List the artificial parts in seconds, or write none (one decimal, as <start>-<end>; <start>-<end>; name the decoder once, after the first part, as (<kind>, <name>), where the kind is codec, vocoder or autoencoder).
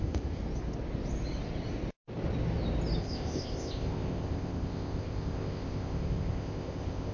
0.0-0.4 (codec, ZipCodec); 3.0-7.1